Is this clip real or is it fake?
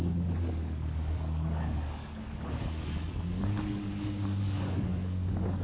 fake